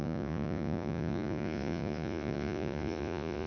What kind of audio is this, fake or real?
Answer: fake